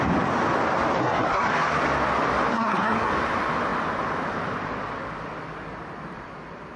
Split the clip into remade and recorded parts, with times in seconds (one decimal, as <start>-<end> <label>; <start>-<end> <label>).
0.0-1.0 recorded; 1.0-1.5 remade; 1.5-2.5 recorded; 2.5-3.1 remade; 3.1-6.8 recorded